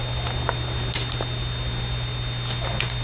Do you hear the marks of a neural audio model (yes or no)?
no